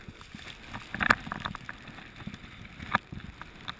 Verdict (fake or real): real